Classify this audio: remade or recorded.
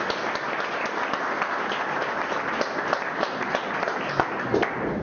recorded